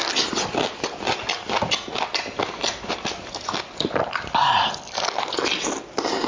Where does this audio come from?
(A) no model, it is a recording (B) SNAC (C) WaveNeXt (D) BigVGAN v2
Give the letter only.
A